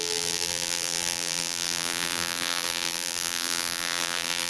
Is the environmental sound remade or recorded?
remade